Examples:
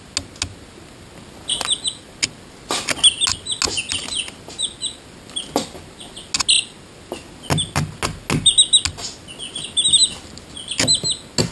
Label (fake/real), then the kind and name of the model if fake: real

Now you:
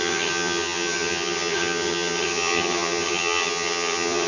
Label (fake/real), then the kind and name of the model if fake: fake, vocoder, HiFi-GAN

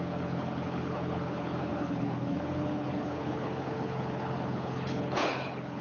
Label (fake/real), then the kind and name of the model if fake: fake, codec, HILCodec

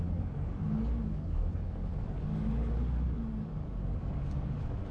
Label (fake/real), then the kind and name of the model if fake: fake, codec, DAC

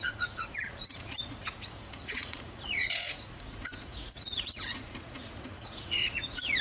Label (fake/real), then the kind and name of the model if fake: fake, vocoder, Vocos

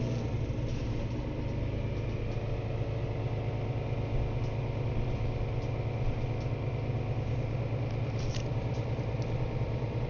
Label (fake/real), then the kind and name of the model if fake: real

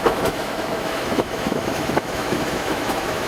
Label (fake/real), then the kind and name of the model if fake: fake, autoencoder, DAC-VAE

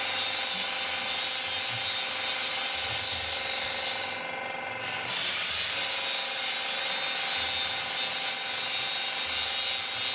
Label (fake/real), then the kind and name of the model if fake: real